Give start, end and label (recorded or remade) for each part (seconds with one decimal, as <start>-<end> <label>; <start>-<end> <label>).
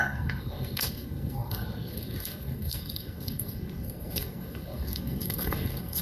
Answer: 0.0-6.0 remade